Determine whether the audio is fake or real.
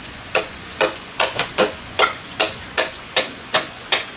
fake